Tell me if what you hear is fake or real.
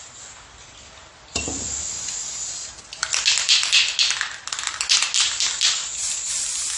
real